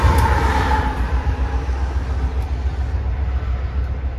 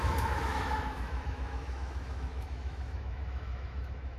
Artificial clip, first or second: second